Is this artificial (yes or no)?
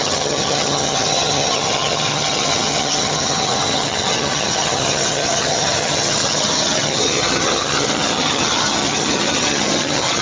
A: yes